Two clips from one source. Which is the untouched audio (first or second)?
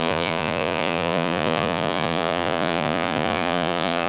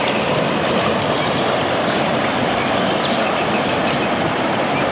second